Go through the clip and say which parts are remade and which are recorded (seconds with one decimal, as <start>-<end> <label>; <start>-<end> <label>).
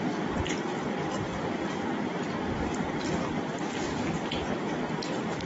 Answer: 0.0-1.3 recorded; 1.3-4.4 remade; 4.4-5.5 recorded